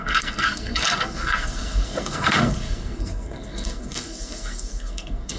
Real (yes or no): no